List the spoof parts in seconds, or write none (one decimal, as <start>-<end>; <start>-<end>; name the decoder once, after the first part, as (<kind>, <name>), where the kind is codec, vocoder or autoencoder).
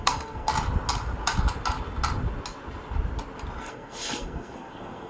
0.0-0.5 (codec, SNAC); 3.6-5.1